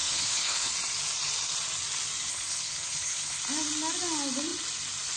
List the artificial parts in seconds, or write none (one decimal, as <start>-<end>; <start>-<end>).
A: 0.0-0.7; 2.3-3.4